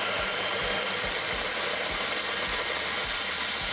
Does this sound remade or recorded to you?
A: recorded